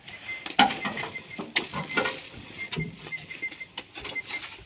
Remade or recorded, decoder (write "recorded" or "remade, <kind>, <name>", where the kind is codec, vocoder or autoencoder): recorded